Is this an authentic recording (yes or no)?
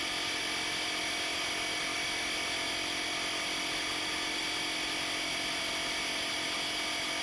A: yes